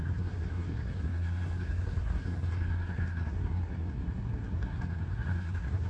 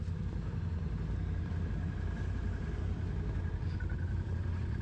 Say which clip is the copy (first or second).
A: first